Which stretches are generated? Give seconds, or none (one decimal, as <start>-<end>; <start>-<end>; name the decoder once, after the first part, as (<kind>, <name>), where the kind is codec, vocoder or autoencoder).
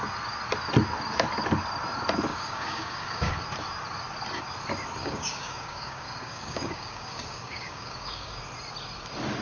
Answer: 2.3-3.3 (codec, DAC); 5.0-8.4